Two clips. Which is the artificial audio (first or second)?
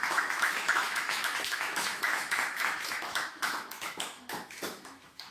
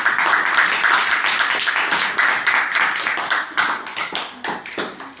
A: first